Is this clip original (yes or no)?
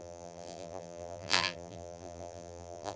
no